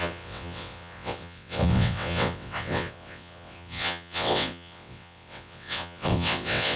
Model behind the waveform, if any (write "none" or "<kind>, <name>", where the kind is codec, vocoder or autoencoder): vocoder, WaveNeXt